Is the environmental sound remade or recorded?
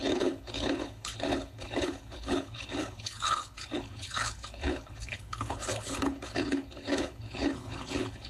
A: remade